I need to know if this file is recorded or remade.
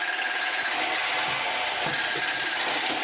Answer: recorded